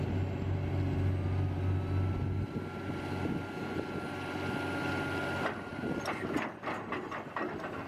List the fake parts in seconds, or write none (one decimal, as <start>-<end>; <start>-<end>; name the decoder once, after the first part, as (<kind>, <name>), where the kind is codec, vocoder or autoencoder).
none